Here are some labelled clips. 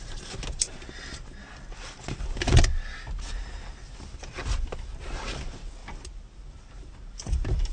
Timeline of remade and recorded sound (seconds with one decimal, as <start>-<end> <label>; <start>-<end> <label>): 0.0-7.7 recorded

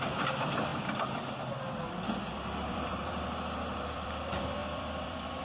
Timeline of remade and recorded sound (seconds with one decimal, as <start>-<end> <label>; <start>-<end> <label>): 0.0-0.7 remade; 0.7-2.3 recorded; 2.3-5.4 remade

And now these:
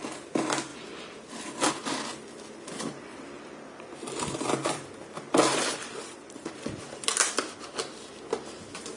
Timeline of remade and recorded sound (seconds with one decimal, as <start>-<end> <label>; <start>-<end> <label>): 0.0-2.1 recorded; 2.1-7.3 remade; 7.3-9.0 recorded